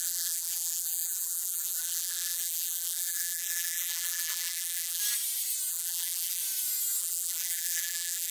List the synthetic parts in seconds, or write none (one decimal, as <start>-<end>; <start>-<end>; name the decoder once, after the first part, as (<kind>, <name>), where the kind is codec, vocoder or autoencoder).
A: 0.0-5.0 (vocoder, BigVGAN v2); 5.7-6.4; 7.0-8.3